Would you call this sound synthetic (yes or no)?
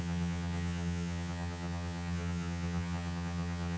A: yes